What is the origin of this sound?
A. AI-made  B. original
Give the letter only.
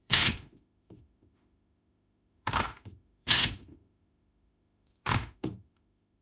A